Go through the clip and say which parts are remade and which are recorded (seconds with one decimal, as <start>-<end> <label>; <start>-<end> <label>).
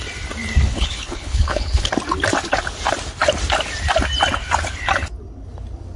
0.0-0.7 recorded; 0.7-1.9 remade; 1.9-6.0 recorded